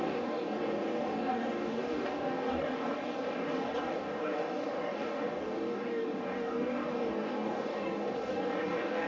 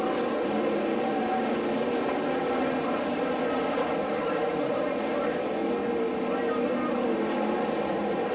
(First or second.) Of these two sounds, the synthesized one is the first